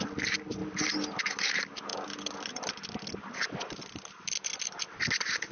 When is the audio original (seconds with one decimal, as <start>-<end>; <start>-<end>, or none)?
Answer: 0.0-5.5